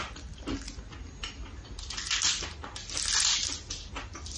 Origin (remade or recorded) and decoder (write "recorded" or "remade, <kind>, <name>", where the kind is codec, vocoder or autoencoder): recorded